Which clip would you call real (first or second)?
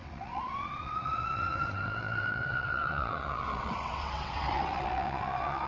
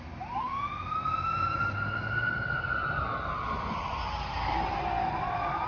second